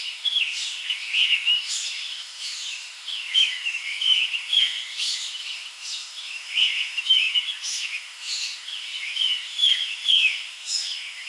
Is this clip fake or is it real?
fake